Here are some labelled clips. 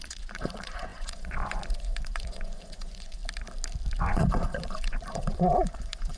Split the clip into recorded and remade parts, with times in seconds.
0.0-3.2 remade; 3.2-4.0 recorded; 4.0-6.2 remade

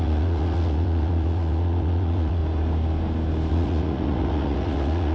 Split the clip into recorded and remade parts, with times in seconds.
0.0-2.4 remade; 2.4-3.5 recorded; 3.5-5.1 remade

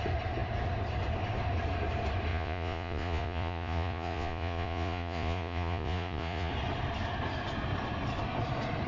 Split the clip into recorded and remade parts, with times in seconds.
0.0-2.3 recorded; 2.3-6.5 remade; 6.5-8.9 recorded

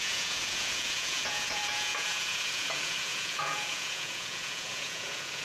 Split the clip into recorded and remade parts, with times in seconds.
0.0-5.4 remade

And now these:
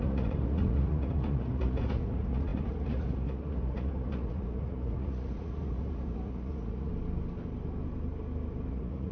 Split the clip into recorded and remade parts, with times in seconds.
0.0-6.9 remade; 6.9-8.7 recorded; 8.7-9.1 remade

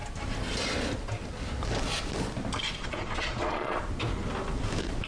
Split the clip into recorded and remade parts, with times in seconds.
0.0-2.8 recorded; 2.8-3.8 remade; 3.8-5.1 recorded